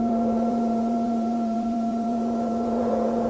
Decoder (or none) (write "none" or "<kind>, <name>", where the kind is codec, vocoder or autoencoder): vocoder, Vocos